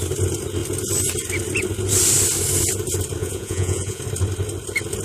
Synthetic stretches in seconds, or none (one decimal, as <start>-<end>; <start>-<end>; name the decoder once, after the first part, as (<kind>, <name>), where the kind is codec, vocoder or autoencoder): 3.2-4.0 (vocoder, Vocos)